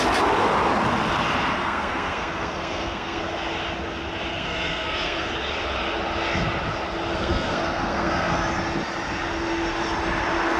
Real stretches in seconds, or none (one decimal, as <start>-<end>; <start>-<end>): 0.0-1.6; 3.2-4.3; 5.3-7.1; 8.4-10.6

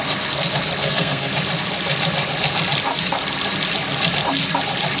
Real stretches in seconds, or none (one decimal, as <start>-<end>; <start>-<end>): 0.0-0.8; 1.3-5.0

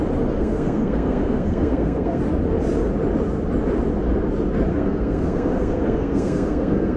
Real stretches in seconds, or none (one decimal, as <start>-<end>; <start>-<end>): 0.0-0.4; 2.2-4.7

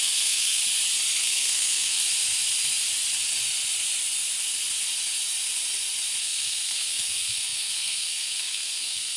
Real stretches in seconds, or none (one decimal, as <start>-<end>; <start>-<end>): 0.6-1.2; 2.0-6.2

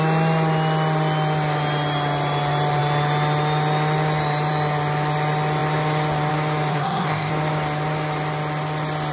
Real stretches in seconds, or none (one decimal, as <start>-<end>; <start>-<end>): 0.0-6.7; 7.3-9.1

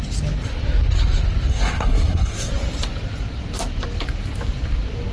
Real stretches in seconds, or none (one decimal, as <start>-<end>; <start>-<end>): 0.0-1.5; 2.5-5.1

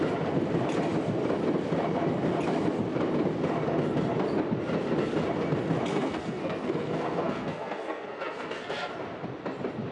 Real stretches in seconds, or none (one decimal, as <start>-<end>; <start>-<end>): 0.0-5.9; 8.9-9.9